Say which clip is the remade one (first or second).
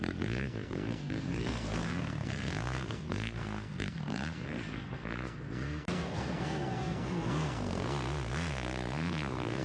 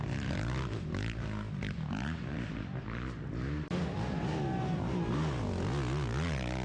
first